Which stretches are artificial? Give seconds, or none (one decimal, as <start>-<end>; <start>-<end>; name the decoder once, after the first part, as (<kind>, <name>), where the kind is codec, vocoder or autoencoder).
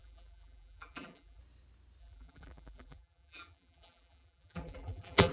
0.0-1.4 (vocoder, BigVGAN v2); 2.0-5.3